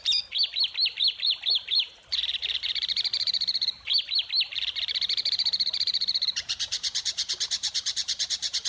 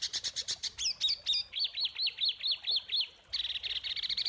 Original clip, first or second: second